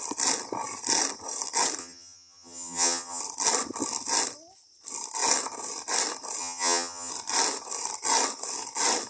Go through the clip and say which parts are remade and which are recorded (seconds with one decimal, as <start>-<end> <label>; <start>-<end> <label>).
0.0-1.8 recorded; 1.8-3.2 remade; 3.2-6.4 recorded; 6.4-7.1 remade; 7.1-9.1 recorded